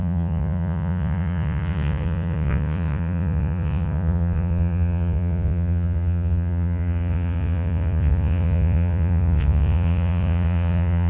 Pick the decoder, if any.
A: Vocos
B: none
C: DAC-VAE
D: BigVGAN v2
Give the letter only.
A